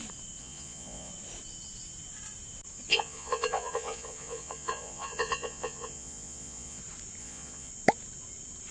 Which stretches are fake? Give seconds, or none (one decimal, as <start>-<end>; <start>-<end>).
0.4-1.1; 2.9-6.8; 7.2-7.7